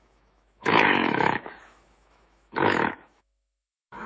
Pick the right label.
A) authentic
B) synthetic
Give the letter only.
B